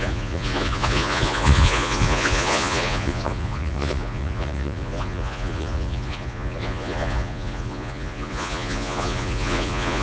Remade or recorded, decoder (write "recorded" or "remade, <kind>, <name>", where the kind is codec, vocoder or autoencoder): remade, vocoder, Vocos